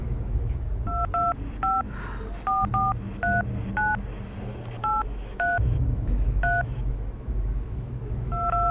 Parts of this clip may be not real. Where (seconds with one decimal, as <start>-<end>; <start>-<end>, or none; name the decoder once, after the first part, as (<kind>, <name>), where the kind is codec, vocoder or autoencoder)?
0.0-0.7 (autoencoder, DAC-VAE); 4.8-8.7